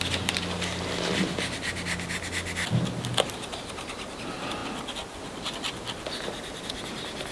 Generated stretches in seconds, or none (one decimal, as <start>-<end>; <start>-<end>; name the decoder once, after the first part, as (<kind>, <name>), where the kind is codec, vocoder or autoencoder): none